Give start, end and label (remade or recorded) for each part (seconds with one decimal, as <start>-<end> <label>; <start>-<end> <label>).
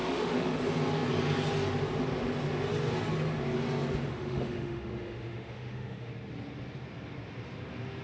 0.0-0.6 remade; 0.6-4.1 recorded; 4.1-6.1 remade; 6.1-8.0 recorded